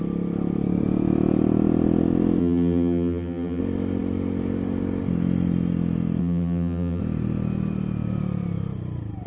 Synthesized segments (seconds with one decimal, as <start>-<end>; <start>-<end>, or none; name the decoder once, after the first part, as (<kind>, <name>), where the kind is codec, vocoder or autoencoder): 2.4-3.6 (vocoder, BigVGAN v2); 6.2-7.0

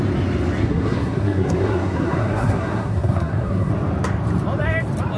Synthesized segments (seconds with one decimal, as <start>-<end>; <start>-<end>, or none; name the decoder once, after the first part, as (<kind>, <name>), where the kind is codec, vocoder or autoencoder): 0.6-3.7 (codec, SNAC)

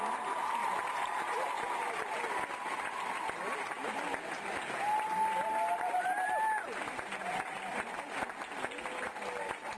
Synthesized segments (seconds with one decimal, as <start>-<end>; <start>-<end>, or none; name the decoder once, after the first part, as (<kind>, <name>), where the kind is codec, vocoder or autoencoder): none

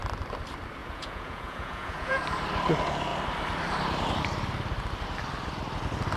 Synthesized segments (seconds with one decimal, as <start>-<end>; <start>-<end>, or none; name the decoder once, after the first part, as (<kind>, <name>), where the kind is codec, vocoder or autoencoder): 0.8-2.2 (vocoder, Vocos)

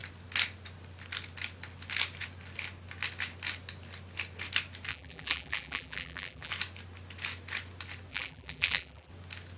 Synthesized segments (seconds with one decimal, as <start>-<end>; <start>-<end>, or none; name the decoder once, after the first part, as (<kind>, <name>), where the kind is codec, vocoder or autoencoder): 4.9-6.5 (vocoder, BigVGAN v2); 8.1-9.1

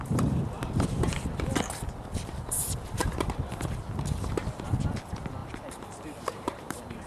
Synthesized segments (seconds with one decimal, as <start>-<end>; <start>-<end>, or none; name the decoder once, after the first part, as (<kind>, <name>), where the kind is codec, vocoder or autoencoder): 5.4-7.1 (vocoder, BigVGAN v2)